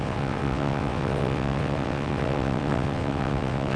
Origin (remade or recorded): remade